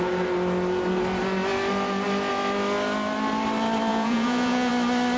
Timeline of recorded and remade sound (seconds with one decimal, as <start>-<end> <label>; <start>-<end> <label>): 0.0-3.9 recorded; 3.9-4.7 remade; 4.7-5.2 recorded